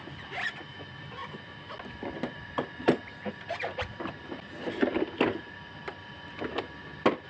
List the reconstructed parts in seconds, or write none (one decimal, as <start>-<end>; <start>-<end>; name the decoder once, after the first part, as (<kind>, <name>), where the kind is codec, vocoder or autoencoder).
none